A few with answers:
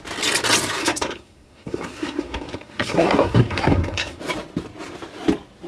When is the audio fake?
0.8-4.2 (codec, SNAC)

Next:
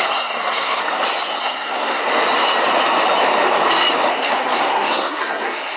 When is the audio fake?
0.0-0.8 (codec, SNAC); 1.4-2.0; 4.1-5.8

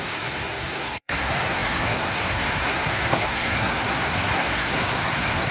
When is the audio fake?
0.0-5.5 (codec, SNAC)

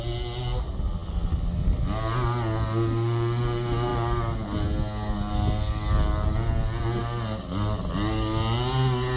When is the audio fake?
none

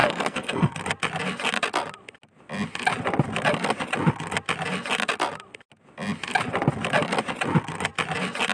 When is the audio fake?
0.0-0.8 (codec, SNAC)

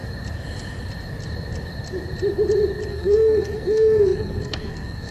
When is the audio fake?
2.9-5.1 (codec, SNAC)